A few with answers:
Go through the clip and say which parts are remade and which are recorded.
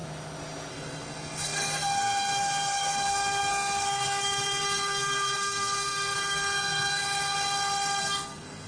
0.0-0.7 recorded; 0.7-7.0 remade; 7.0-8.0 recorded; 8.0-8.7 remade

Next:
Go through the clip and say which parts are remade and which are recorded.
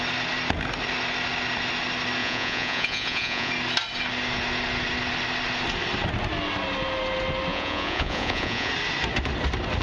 0.0-2.2 recorded; 2.2-3.5 remade; 3.5-7.5 recorded; 7.5-8.7 remade; 8.7-9.8 recorded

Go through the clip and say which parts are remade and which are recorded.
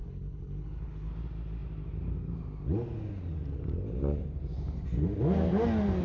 0.0-1.1 remade; 1.1-6.0 recorded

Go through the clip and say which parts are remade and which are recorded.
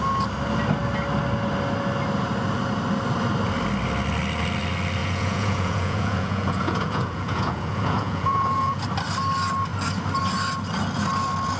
0.0-5.0 recorded; 5.0-8.8 remade; 8.8-11.6 recorded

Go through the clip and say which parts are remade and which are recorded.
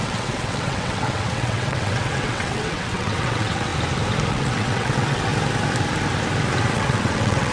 0.0-3.7 remade; 3.7-4.3 recorded; 4.3-5.3 remade; 5.3-6.7 recorded; 6.7-7.5 remade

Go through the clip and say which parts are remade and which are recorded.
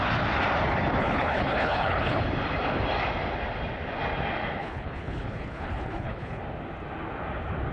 0.0-1.0 recorded; 1.0-2.2 remade; 2.2-4.6 recorded; 4.6-6.4 remade; 6.4-7.7 recorded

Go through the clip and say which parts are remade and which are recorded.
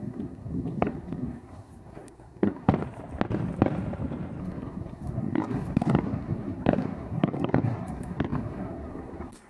0.0-2.7 remade; 2.7-4.4 recorded; 4.4-9.5 remade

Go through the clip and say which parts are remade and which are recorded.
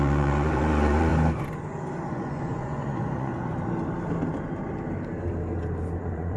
0.0-1.1 remade; 1.1-2.1 recorded; 2.1-3.3 remade; 3.3-6.0 recorded; 6.0-6.4 remade